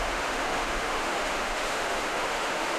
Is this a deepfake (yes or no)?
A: yes